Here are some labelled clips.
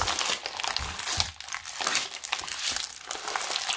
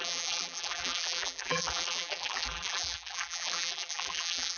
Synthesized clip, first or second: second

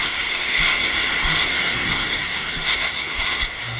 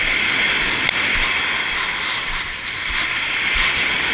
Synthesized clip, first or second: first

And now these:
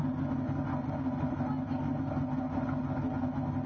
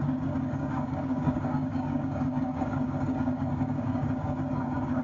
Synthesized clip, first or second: second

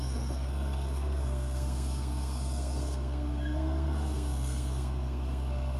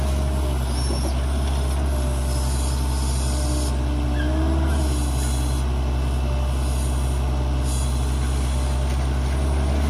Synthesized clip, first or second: first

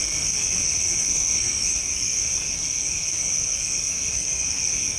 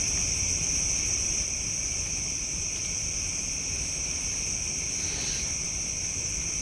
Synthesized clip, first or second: first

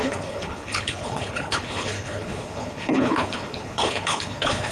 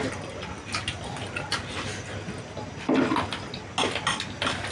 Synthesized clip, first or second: first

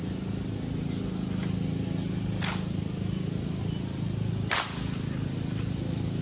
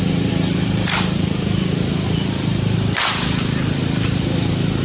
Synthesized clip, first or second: second